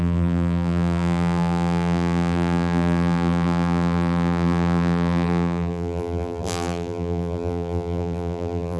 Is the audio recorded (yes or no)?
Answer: no